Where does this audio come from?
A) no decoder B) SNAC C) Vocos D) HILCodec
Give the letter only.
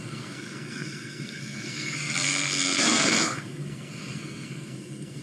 B